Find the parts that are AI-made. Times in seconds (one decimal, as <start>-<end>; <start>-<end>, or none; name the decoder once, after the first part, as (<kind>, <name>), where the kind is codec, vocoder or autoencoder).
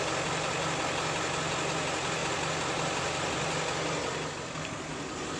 none